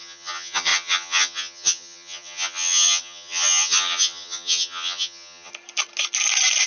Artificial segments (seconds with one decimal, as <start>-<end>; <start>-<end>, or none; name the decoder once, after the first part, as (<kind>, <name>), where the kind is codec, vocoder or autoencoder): 0.0-5.5 (vocoder, HiFi-GAN)